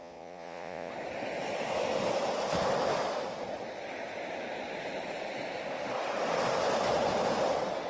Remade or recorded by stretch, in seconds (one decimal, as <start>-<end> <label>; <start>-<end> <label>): 0.0-0.9 remade; 0.9-7.9 recorded